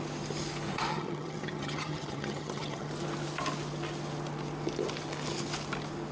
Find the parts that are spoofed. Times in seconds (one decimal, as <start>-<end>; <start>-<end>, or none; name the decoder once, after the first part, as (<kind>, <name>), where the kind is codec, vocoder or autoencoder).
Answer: 0.9-2.9 (vocoder, HiFi-GAN)